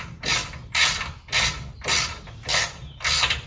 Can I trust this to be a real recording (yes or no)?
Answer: yes